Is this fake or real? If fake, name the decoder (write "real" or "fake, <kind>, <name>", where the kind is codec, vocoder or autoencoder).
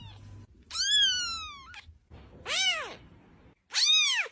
real